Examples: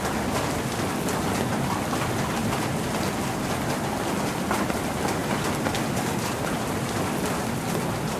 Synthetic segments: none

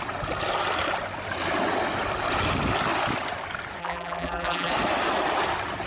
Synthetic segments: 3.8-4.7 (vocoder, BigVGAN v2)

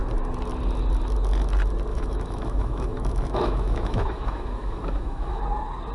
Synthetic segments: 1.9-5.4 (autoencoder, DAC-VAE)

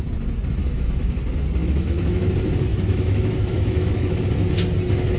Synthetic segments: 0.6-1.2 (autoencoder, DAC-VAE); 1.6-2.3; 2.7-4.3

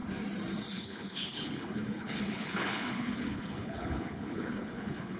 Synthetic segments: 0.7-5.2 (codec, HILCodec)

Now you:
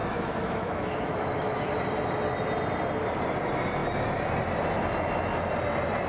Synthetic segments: 0.0-1.7 (autoencoder, DAC-VAE)

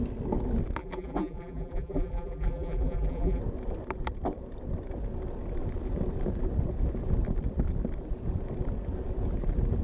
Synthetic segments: 0.8-3.4 (vocoder, BigVGAN v2)